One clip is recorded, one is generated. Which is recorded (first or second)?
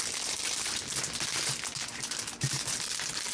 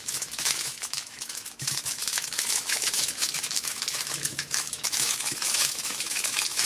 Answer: first